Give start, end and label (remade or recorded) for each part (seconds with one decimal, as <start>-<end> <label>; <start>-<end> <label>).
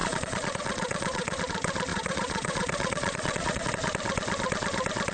0.0-1.4 remade; 1.4-1.9 recorded; 1.9-3.7 remade; 3.7-5.1 recorded